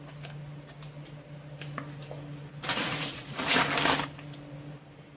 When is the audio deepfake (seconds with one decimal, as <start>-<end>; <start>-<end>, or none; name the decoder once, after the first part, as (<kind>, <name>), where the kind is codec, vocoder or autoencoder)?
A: 2.7-3.6 (vocoder, Vocos)